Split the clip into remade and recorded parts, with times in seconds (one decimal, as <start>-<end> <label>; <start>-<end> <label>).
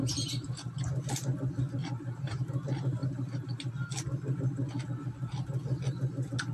0.0-0.8 remade; 0.8-1.8 recorded; 1.8-2.5 remade; 2.5-3.0 recorded; 3.0-3.7 remade; 3.7-6.5 recorded